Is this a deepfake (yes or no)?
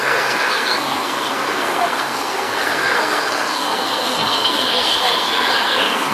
yes